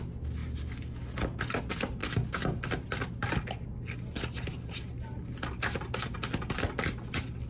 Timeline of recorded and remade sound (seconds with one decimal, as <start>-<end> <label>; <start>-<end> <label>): 0.0-7.5 recorded